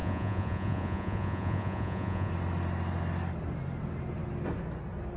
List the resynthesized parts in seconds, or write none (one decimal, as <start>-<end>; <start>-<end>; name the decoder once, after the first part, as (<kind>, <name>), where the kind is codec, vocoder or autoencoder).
0.0-2.3 (vocoder, Vocos)